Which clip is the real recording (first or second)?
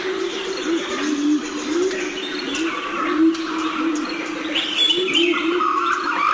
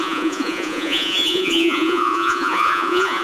first